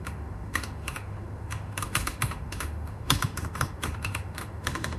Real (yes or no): no